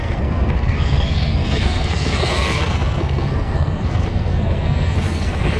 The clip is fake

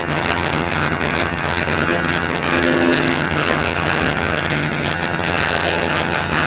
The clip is fake